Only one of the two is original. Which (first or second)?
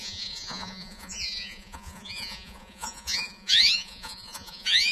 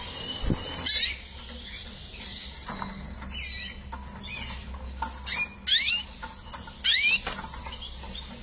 second